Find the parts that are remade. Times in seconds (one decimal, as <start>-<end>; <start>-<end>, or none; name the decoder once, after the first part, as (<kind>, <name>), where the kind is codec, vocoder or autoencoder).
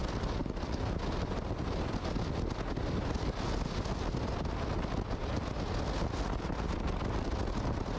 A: none